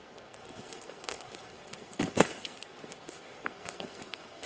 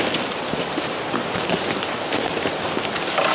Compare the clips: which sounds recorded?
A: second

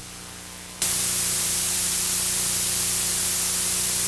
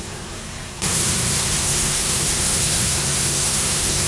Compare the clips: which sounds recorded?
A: first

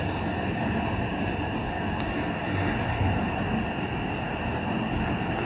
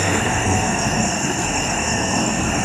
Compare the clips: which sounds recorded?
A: first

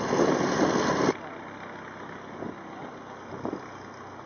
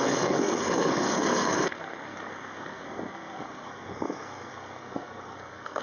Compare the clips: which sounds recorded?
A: first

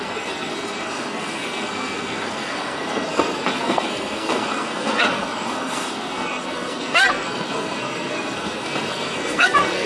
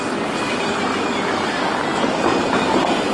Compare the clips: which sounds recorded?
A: second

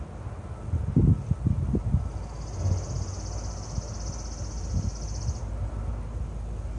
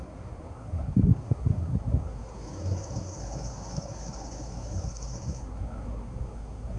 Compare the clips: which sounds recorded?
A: first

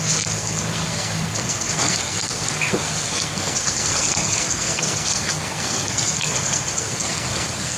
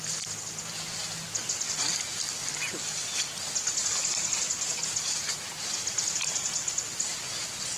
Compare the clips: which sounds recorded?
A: second